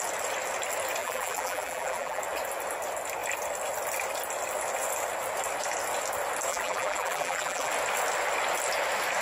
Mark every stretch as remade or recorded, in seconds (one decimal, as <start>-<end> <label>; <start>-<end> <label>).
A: 0.0-1.0 recorded; 1.0-2.2 remade; 2.2-6.5 recorded; 6.5-7.7 remade; 7.7-9.2 recorded

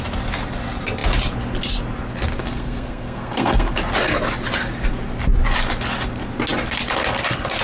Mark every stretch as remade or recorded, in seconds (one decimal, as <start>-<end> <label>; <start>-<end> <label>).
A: 0.0-2.4 recorded; 2.4-3.7 remade; 3.7-7.6 recorded

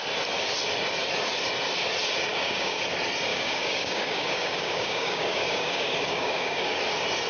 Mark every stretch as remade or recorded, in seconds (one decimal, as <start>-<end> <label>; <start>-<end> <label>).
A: 0.0-2.3 recorded; 2.3-2.8 remade; 2.8-3.3 recorded; 3.3-6.8 remade; 6.8-7.3 recorded

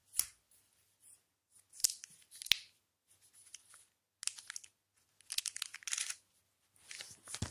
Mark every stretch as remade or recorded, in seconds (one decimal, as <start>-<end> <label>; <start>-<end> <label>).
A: 0.0-7.5 recorded

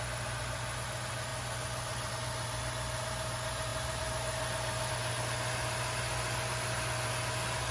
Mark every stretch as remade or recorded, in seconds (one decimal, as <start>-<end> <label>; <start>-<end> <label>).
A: 0.0-7.7 recorded

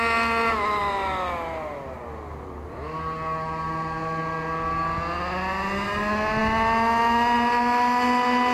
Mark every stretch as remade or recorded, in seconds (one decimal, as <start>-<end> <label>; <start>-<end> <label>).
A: 0.0-8.5 recorded

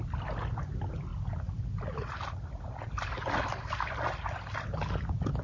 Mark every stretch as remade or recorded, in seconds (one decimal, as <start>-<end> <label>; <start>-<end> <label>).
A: 0.0-5.4 recorded